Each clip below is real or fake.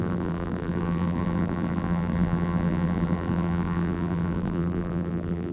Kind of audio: fake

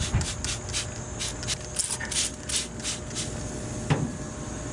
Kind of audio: real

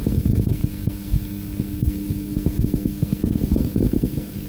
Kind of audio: fake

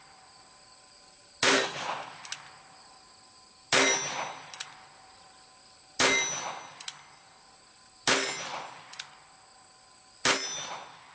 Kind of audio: real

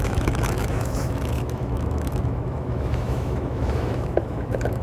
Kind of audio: fake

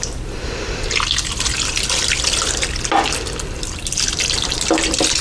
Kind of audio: real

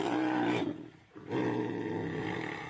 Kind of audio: real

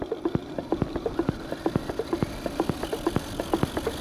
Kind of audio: real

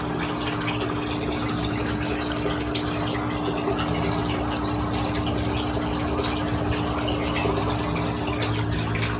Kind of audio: real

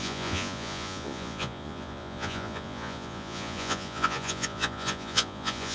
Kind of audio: fake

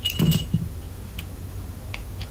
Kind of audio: fake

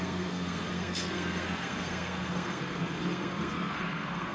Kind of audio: fake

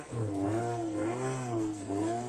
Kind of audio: fake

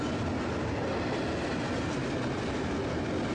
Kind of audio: real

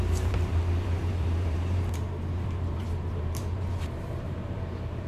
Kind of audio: fake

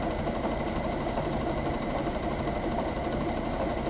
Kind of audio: fake